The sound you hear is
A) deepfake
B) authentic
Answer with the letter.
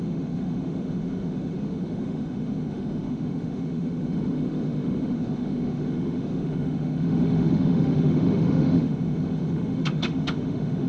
A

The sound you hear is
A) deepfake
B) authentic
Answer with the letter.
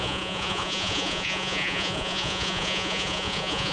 A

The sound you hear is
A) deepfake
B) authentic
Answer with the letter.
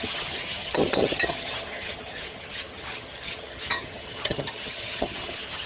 A